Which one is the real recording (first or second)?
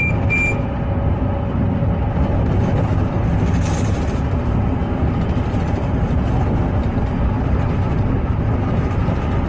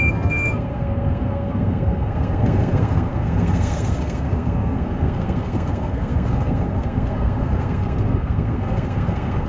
first